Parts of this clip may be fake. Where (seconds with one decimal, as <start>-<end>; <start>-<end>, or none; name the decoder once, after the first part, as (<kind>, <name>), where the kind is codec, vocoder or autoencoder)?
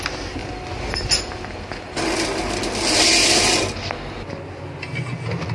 none